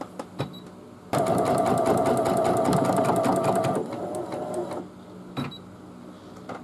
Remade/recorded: recorded